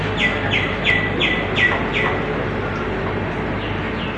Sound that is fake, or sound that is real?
real